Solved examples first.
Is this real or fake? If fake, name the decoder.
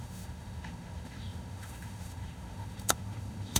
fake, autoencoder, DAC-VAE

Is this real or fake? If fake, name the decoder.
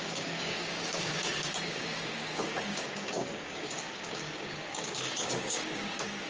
fake, codec, DAC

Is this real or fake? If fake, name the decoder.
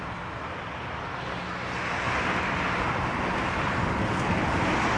real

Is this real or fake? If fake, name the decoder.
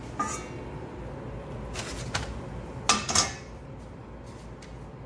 real